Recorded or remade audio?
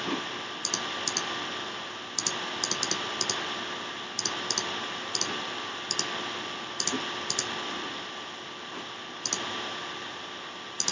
recorded